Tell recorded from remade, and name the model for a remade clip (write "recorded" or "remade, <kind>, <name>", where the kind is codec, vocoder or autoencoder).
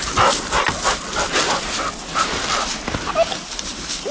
recorded